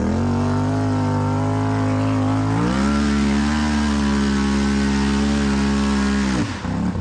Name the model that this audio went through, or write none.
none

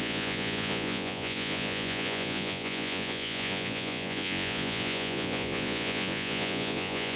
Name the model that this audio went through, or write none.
vocoder, Vocos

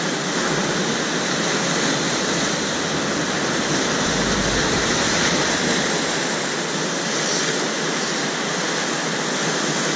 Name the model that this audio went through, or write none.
none